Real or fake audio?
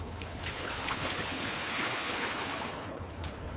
fake